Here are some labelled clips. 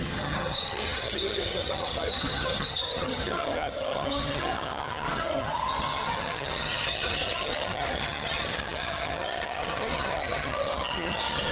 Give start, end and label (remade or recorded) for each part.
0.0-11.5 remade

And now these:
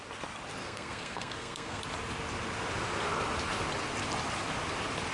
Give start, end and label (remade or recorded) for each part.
0.0-0.6 recorded; 0.6-1.8 remade; 1.8-5.1 recorded

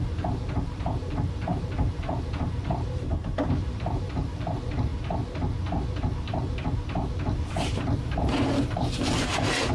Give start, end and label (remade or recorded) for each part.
0.0-4.9 remade; 4.9-8.3 recorded; 8.3-9.7 remade

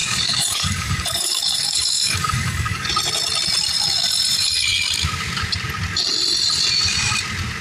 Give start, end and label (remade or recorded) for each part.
0.0-2.9 remade; 2.9-7.6 recorded

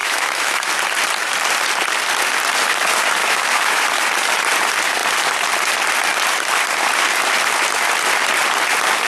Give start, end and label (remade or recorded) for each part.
0.0-0.7 remade; 0.7-3.2 recorded; 3.2-3.8 remade; 3.8-9.1 recorded

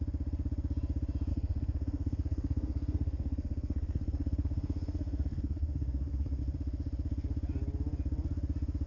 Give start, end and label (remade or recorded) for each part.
0.0-1.3 recorded; 1.3-6.4 remade; 6.4-8.9 recorded

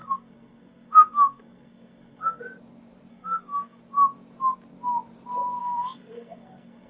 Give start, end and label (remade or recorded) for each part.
0.0-2.4 remade; 2.4-3.1 recorded; 3.1-3.8 remade; 3.8-5.6 recorded; 5.6-6.9 remade